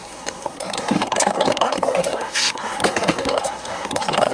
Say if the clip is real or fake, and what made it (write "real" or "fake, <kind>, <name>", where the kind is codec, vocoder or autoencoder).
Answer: fake, codec, SNAC